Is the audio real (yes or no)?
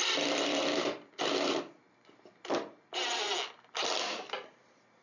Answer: yes